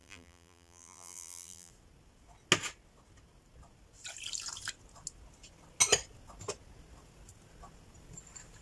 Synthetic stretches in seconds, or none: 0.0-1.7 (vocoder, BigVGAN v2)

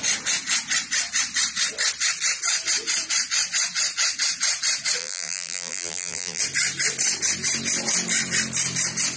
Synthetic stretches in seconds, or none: 5.0-6.4 (vocoder, BigVGAN v2)